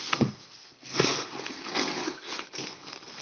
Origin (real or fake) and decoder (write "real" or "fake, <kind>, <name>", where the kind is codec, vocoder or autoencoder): fake, codec, SNAC